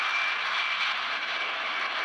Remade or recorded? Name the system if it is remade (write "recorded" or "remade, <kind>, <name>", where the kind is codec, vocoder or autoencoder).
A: recorded